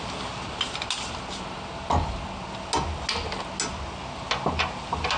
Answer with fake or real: real